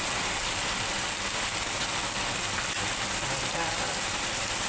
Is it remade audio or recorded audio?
remade